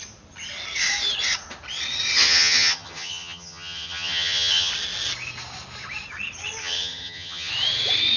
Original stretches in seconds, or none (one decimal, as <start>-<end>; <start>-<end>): 0.0-2.2; 4.7-6.6; 7.5-8.2